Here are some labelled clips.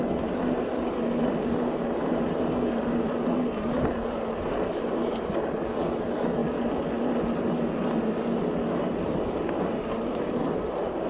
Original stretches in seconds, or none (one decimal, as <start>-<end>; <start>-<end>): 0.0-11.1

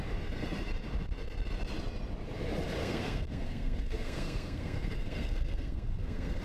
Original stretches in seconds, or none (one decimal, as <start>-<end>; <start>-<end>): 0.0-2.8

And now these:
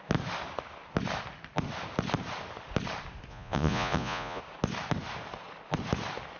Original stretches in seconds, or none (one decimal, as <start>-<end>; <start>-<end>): 0.0-3.3; 4.4-6.4